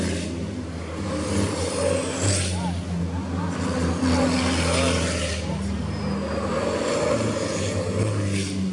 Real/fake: real